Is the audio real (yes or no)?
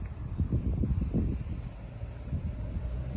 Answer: yes